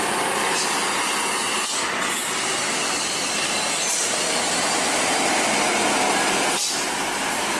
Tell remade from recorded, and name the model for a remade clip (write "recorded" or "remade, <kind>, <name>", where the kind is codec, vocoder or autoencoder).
recorded